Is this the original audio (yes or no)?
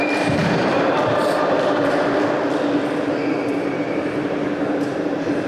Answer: yes